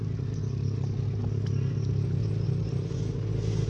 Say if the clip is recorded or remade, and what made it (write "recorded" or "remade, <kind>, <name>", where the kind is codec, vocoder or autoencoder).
recorded